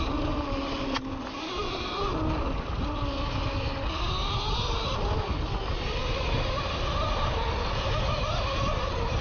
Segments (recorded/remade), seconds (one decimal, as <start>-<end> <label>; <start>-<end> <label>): 0.0-9.2 recorded